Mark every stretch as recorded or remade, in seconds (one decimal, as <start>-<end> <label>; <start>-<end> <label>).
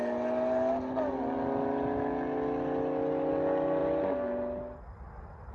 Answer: 0.0-5.5 recorded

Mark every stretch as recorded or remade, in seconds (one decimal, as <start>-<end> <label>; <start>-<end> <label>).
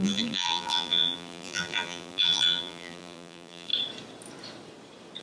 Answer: 0.0-3.7 remade; 3.7-5.2 recorded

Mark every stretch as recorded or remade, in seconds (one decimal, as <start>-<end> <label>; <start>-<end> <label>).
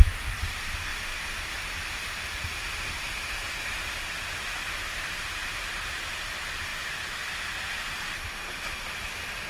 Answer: 0.0-0.9 remade; 0.9-4.9 recorded; 4.9-6.7 remade; 6.7-7.4 recorded; 7.4-9.5 remade